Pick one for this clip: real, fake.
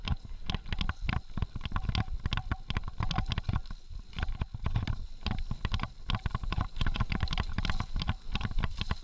real